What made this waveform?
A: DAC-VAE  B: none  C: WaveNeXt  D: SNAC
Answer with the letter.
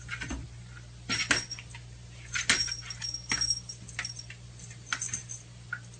B